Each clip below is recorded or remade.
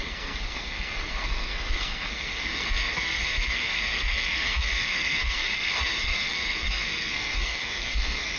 remade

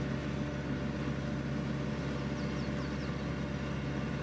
recorded